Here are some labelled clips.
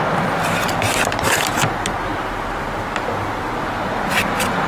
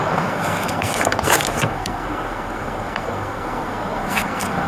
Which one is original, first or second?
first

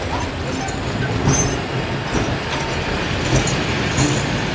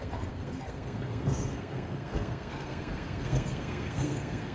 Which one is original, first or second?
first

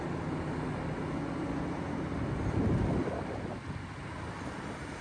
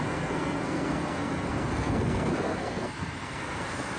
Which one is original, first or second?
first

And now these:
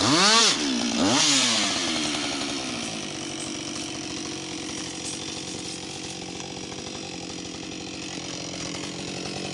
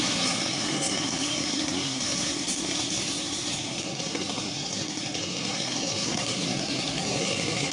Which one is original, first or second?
first